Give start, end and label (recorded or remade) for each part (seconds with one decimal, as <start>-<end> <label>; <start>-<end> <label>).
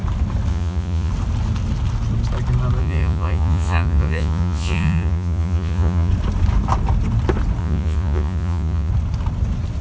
0.0-0.5 recorded; 0.5-1.1 remade; 1.1-2.8 recorded; 2.8-6.1 remade; 6.1-7.6 recorded; 7.6-8.9 remade; 8.9-9.8 recorded